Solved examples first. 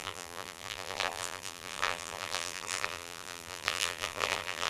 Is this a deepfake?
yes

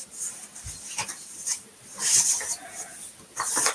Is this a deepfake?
yes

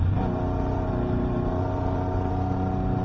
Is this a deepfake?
yes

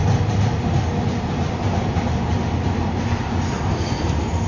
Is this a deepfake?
no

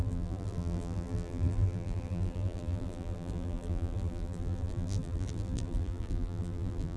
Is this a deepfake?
yes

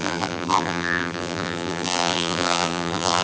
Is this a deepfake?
yes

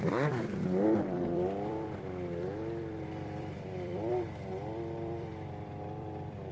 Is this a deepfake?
yes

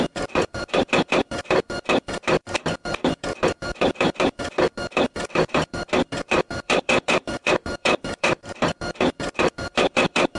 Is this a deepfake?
yes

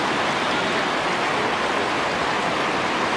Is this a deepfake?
no